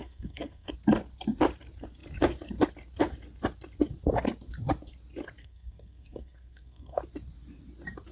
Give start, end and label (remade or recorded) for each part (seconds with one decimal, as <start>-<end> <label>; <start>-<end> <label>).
0.0-0.7 remade; 0.7-5.4 recorded; 5.4-7.0 remade; 7.0-8.1 recorded